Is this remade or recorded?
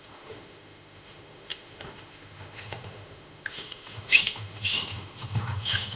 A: remade